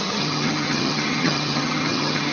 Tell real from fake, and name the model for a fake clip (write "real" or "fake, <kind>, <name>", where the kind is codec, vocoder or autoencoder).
fake, vocoder, HiFi-GAN